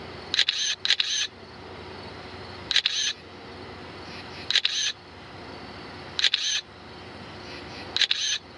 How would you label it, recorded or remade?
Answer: recorded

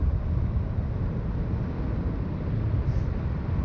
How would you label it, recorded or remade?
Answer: recorded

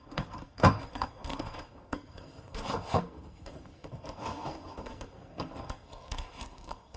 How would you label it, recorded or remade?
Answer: remade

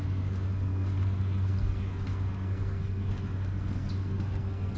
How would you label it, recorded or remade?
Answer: remade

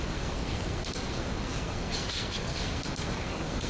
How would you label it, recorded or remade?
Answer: remade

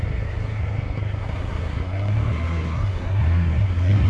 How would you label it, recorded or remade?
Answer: remade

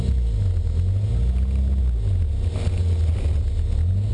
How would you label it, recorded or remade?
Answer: recorded